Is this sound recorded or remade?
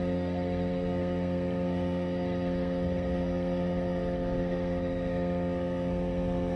remade